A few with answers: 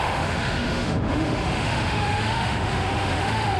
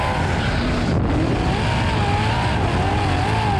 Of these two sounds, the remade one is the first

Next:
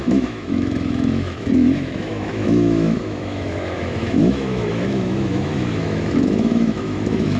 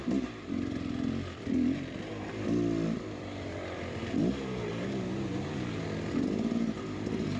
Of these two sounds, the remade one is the first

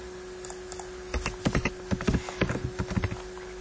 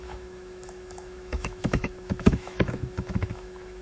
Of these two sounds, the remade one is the second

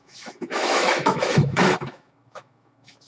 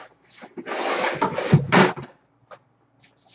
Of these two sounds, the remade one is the first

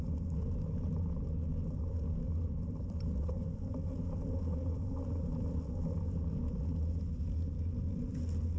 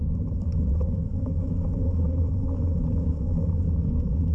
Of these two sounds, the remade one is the second